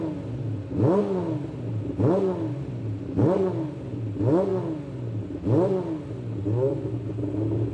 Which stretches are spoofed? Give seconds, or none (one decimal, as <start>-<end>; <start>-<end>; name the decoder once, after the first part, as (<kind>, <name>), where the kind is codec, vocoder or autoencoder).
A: none